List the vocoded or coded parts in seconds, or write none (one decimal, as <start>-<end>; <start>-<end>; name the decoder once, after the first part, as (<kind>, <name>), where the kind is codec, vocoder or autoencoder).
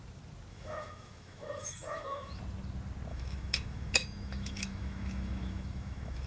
0.5-2.4 (autoencoder, DAC-VAE); 3.1-6.3